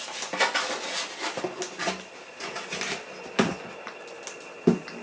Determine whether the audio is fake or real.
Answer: real